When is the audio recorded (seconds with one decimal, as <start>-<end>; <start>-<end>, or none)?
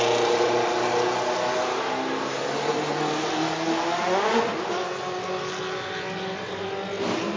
0.0-7.4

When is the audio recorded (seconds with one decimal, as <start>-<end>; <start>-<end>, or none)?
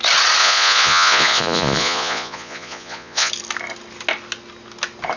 0.0-0.4; 3.3-5.2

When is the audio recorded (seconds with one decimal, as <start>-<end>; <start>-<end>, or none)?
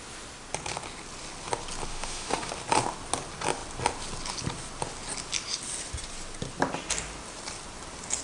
0.0-1.9; 2.5-8.2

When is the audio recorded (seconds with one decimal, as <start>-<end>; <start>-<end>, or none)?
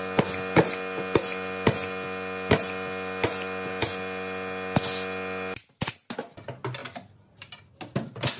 0.0-8.4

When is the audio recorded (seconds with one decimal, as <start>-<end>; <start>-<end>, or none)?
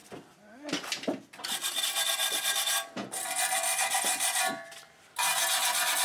1.8-2.2; 4.8-6.0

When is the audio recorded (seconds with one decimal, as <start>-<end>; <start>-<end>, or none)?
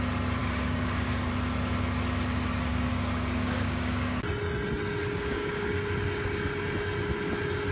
0.0-0.4; 1.3-2.7; 4.2-5.0; 5.7-7.7